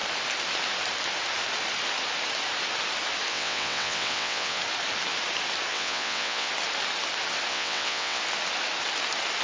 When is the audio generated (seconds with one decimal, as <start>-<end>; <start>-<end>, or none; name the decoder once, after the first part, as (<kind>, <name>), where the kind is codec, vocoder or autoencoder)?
3.3-4.6 (vocoder, WaveNeXt); 5.7-6.5; 7.5-8.2

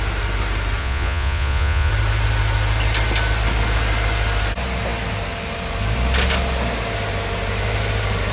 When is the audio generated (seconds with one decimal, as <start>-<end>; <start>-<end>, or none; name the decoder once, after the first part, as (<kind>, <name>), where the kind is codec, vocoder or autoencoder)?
0.8-1.9 (vocoder, Vocos)

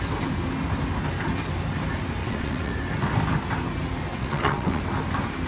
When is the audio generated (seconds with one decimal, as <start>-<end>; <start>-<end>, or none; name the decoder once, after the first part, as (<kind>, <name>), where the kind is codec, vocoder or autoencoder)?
2.2-2.7 (vocoder, WaveNeXt); 4.1-4.8

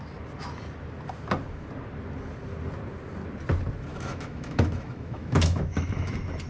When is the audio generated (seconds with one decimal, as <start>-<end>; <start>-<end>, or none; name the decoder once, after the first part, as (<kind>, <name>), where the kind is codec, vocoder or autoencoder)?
3.9-6.1 (autoencoder, DAC-VAE)

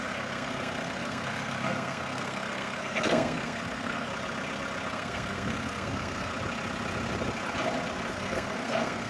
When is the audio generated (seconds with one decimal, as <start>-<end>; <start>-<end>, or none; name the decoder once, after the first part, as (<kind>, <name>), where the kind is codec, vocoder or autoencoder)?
0.0-4.1 (codec, SNAC); 4.9-6.3; 8.1-9.1